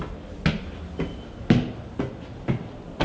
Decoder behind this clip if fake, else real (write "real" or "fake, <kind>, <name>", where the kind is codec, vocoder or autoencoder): real